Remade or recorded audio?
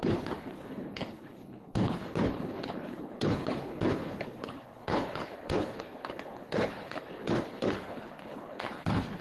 remade